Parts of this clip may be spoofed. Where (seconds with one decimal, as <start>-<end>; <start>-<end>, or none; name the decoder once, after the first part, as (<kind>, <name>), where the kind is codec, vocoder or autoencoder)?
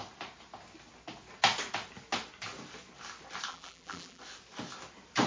3.5-4.2 (vocoder, BigVGAN v2)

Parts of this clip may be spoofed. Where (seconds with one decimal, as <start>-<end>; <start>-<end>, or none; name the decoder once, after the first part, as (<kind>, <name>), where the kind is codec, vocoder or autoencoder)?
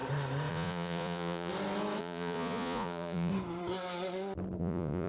0.5-1.5 (vocoder, Vocos); 2.0-3.3; 4.6-5.1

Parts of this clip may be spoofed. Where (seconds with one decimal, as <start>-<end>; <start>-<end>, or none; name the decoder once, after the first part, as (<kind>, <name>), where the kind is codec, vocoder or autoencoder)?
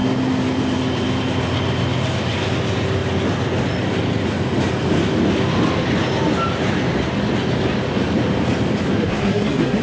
9.0-9.8 (codec, SNAC)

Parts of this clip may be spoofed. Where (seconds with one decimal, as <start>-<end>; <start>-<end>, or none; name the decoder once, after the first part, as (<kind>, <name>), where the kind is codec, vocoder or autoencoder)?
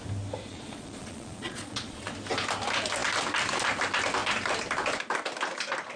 0.5-2.1 (vocoder, Vocos)